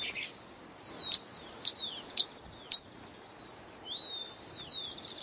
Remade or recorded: recorded